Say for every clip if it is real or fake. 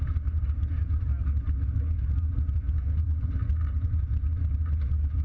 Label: real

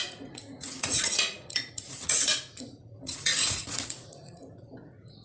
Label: fake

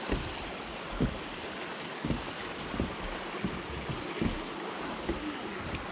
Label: real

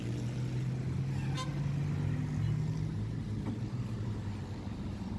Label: real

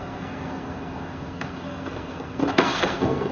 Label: fake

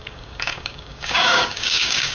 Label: fake